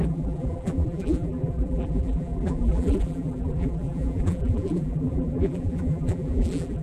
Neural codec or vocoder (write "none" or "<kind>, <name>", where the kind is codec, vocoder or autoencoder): vocoder, BigVGAN v2